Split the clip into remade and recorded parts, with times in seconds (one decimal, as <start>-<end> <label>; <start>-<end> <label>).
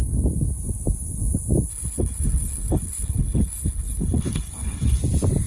0.0-1.7 recorded; 1.7-5.0 remade; 5.0-5.5 recorded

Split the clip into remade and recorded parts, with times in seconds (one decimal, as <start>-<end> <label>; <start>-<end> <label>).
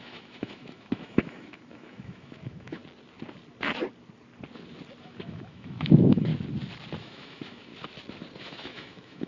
0.0-2.8 remade; 2.8-5.0 recorded; 5.0-6.3 remade; 6.3-7.0 recorded; 7.0-7.7 remade; 7.7-8.4 recorded; 8.4-9.3 remade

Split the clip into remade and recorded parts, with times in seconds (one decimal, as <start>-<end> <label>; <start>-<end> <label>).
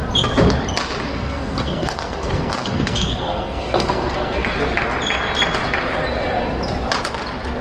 0.0-1.1 recorded; 1.1-4.5 remade; 4.5-7.6 recorded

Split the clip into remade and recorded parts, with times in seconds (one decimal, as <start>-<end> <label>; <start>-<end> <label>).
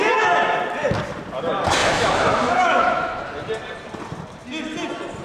0.0-1.8 recorded; 1.8-3.2 remade; 3.2-5.2 recorded